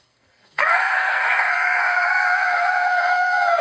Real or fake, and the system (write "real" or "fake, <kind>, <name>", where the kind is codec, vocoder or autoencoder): fake, codec, SNAC